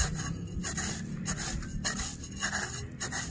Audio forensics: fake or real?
real